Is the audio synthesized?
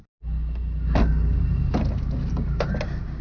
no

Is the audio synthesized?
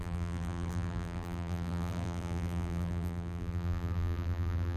yes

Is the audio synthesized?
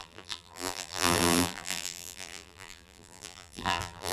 yes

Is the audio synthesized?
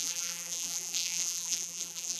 yes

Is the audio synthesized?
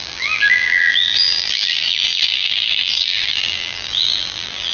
yes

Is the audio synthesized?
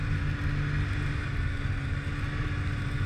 no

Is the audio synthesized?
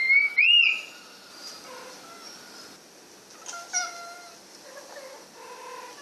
no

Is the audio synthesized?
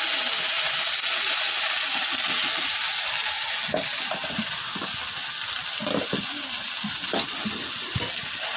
no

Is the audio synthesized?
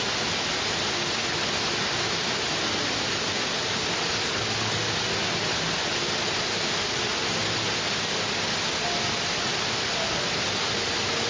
no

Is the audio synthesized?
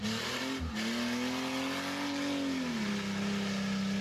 no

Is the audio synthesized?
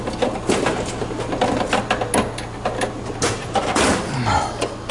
no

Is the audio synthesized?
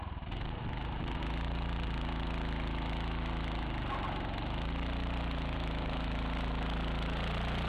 no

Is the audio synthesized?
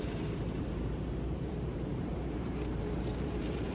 yes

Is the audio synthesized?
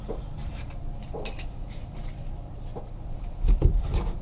yes